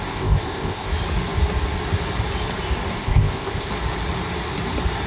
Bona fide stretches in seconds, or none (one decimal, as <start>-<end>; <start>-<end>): 0.9-3.0; 3.7-5.1